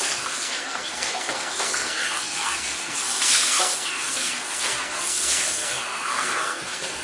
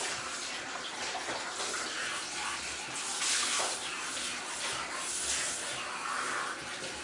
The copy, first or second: first